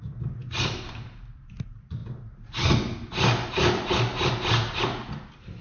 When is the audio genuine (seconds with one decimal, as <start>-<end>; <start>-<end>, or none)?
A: 0.0-0.4; 1.3-5.6